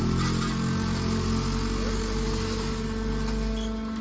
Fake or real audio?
real